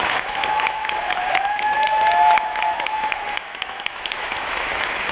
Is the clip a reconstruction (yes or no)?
yes